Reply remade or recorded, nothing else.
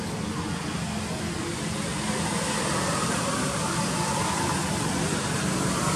recorded